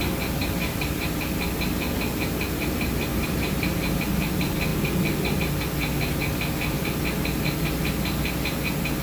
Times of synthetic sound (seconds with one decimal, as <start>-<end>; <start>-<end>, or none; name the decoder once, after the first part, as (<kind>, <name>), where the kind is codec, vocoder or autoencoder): 0.4-1.2 (vocoder, BigVGAN v2); 3.1-4.0